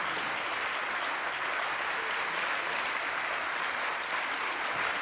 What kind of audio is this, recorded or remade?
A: recorded